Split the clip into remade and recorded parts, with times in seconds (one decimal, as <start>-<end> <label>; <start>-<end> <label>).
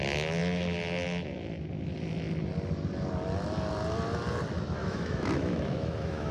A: 0.0-4.8 recorded; 4.8-6.3 remade